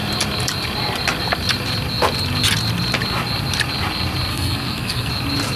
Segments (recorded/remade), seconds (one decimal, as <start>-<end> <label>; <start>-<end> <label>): 0.0-4.3 recorded; 4.3-5.1 remade; 5.1-5.6 recorded